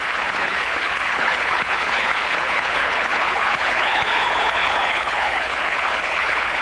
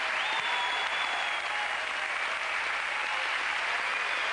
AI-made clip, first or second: first